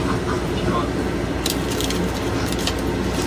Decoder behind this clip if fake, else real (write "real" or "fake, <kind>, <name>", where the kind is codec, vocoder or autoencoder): real